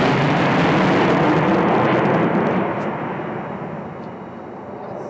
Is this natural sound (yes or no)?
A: yes